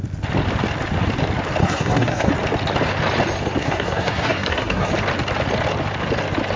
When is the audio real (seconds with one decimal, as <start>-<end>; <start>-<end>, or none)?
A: 0.0-1.6; 2.3-3.6; 4.9-6.6